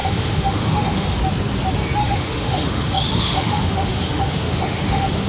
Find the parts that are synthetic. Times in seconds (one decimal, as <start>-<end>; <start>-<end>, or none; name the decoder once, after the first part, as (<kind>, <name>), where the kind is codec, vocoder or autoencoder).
0.0-1.2 (autoencoder, DAC-VAE); 2.0-5.3